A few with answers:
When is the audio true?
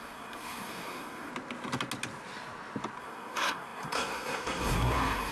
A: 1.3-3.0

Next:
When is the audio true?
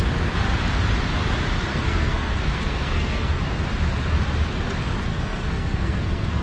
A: 0.0-1.7; 3.4-5.1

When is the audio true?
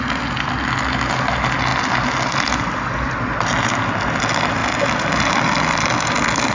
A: 0.0-6.5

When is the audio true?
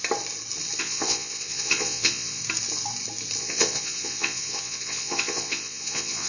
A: 0.0-0.8; 2.4-3.4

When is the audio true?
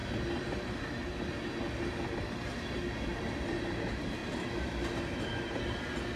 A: 0.0-4.2; 5.4-6.2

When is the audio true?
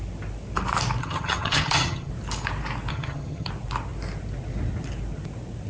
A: 0.0-1.0; 2.1-2.9; 3.5-5.7